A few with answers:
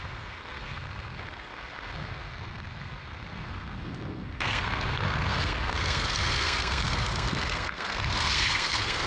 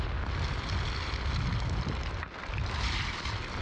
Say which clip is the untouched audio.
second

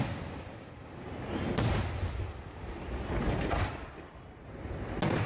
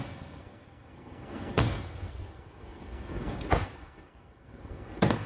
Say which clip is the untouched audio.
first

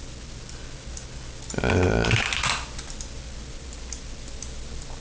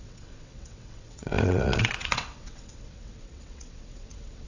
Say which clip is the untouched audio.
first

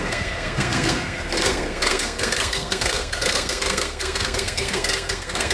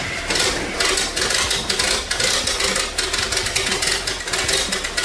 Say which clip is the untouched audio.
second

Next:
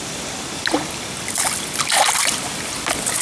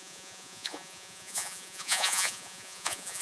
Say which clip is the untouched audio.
first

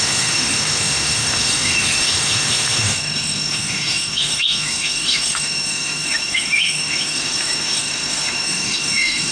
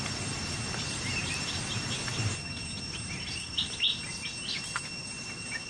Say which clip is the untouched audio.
second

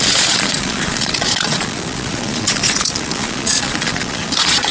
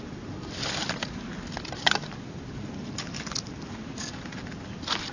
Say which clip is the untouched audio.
second